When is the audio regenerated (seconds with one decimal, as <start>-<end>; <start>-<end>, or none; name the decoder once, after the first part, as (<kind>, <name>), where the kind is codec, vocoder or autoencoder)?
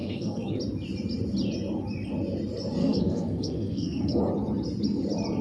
0.0-0.6 (codec, SNAC); 2.8-4.2